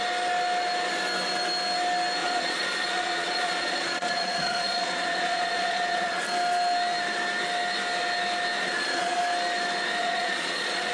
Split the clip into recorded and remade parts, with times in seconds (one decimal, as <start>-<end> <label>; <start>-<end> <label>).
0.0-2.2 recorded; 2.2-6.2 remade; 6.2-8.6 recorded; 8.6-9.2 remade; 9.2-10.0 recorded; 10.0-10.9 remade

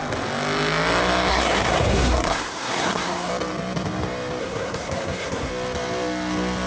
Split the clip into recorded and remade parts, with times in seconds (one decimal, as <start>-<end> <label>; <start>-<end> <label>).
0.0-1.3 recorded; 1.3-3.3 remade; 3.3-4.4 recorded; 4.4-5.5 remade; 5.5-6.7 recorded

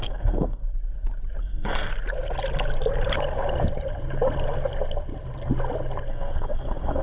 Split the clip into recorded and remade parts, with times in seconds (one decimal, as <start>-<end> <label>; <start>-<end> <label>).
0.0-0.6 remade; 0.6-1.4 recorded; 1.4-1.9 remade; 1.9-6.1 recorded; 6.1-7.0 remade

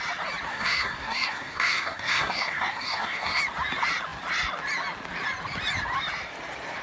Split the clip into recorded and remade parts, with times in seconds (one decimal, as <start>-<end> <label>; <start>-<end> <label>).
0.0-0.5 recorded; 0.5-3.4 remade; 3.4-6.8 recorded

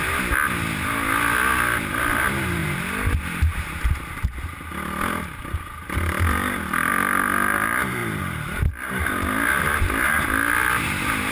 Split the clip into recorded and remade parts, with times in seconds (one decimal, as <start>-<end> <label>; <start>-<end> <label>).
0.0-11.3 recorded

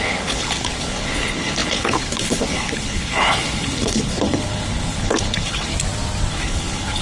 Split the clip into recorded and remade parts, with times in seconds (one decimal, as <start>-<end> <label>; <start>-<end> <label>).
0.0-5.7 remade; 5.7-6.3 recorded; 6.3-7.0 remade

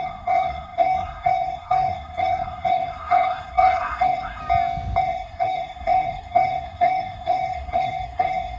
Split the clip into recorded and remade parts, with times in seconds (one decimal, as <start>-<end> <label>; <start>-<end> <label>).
0.0-4.4 remade; 4.4-5.0 recorded; 5.0-8.6 remade